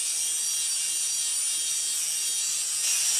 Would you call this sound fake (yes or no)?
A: no